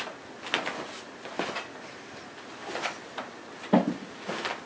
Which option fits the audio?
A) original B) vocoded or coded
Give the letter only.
A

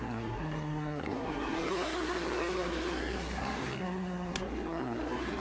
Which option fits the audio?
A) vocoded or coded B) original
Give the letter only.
A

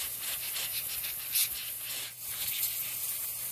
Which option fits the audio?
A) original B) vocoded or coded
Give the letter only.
A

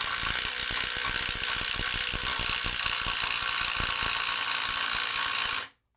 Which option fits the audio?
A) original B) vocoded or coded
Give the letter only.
A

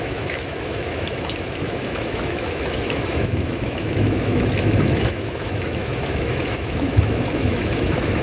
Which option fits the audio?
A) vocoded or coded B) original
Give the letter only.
A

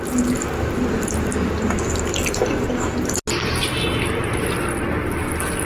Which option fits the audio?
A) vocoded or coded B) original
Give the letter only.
B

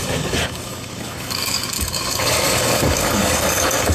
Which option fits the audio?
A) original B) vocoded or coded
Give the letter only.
B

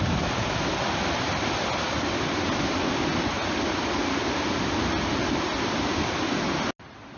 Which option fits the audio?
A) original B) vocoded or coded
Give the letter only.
A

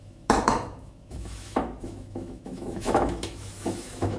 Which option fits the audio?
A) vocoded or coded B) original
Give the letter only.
A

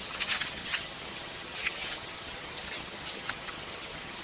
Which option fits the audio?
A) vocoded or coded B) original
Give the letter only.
A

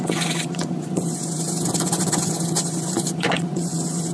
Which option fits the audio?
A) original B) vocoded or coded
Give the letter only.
B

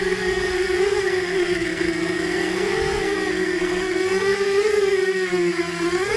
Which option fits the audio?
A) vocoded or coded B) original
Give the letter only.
A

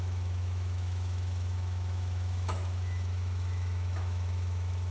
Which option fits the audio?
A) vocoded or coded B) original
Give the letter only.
A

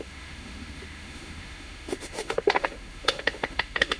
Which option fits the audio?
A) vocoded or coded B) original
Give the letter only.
A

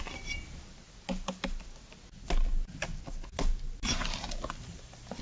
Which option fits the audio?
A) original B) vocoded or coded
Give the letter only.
A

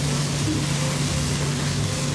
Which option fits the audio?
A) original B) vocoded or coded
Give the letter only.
A